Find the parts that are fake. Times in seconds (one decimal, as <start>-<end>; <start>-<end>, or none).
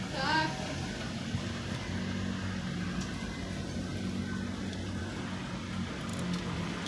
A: 0.8-2.0